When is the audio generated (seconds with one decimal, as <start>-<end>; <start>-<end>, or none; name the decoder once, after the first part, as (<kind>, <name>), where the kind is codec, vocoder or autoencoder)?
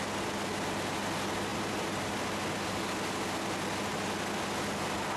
none